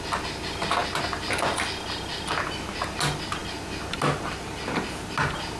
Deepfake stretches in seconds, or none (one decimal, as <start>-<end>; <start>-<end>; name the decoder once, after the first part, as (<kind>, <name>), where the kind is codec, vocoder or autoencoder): none